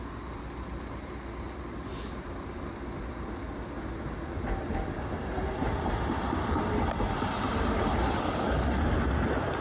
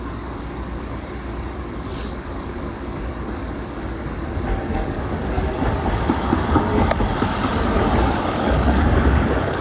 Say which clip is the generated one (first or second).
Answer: second